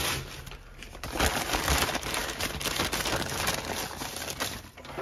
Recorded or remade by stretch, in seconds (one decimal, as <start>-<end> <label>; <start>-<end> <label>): 0.0-5.0 recorded